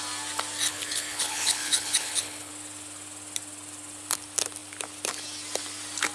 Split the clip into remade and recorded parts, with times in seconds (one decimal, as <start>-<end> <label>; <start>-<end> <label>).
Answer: 0.0-0.7 recorded; 0.7-2.5 remade; 2.5-6.1 recorded